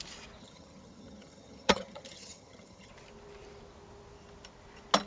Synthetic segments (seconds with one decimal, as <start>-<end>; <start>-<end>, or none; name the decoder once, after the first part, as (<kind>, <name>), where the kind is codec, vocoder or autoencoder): 0.4-2.9 (vocoder, HiFi-GAN)